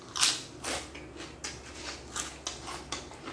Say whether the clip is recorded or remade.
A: recorded